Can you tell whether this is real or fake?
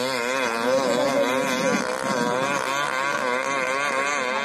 real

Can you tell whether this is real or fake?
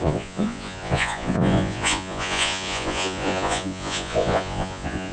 fake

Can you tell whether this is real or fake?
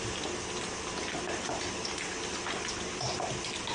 real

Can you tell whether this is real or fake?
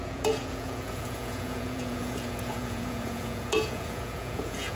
fake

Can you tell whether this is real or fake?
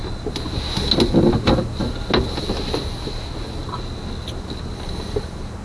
real